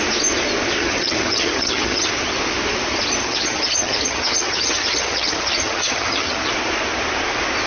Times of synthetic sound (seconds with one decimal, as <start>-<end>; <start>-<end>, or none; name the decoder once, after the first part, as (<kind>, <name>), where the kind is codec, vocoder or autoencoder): 0.8-2.1 (vocoder, HiFi-GAN); 3.2-6.5